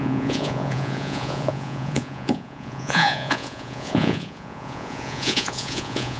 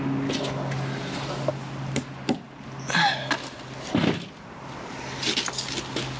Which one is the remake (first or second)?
first